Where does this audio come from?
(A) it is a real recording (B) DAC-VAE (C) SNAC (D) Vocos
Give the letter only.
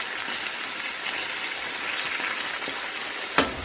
A